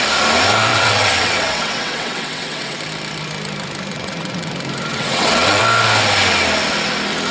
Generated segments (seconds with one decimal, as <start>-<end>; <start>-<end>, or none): 0.7-2.8; 3.9-4.5; 4.9-5.6